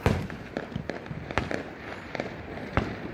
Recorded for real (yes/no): no